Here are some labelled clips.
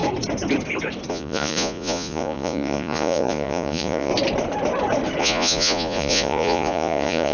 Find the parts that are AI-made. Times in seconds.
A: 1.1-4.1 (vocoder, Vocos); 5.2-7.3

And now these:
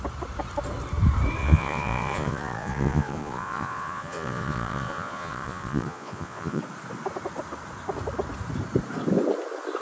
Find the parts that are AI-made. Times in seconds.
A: 1.4-6.6 (vocoder, Vocos)

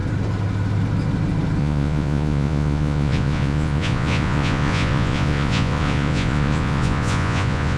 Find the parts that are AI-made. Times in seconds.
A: 1.6-7.8 (vocoder, Vocos)

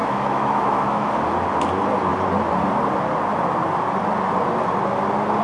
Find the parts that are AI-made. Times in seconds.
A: 0.0-1.1 (autoencoder, DAC-VAE)

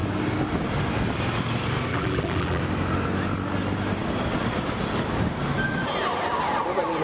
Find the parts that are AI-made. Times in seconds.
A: 1.9-2.6 (vocoder, BigVGAN v2)

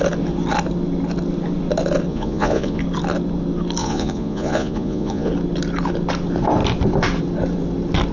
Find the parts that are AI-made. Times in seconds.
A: 2.1-2.8 (vocoder, Vocos); 3.8-5.3